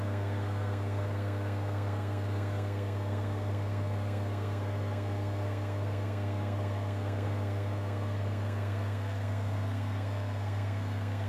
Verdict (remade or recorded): remade